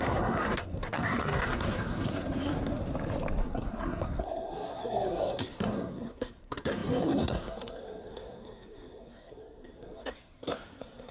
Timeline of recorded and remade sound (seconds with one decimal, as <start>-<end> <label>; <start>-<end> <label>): 0.0-2.8 remade; 2.8-3.4 recorded; 3.4-11.1 remade